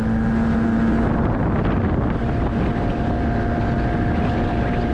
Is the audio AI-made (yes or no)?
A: no